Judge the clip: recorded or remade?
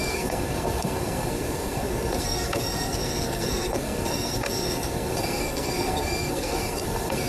remade